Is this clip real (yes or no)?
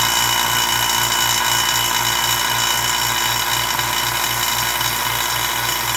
yes